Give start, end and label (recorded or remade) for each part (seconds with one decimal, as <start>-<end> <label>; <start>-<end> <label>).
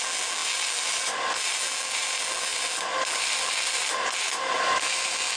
0.0-5.4 recorded